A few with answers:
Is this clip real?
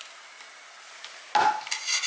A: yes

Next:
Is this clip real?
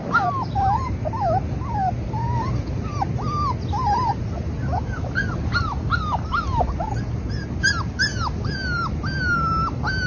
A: yes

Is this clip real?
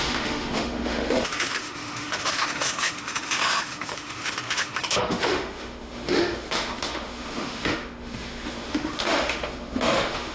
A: no